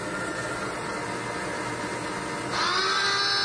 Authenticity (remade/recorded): recorded